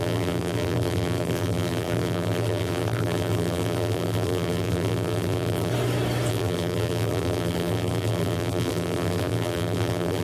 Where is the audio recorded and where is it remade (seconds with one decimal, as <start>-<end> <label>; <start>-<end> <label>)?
0.0-5.7 remade; 5.7-6.3 recorded; 6.3-10.2 remade